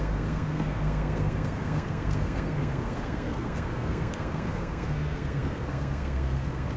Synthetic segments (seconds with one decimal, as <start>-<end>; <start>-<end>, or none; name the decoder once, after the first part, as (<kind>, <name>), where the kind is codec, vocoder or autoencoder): 0.0-6.8 (codec, SNAC)